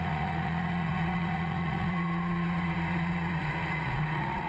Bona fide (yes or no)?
no